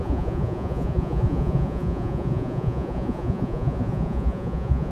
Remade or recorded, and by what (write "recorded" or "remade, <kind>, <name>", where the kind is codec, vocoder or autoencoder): remade, vocoder, Vocos